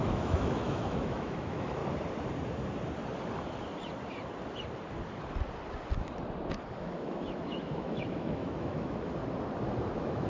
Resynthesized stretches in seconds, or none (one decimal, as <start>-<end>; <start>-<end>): 0.0-1.8; 6.7-9.2; 9.9-10.3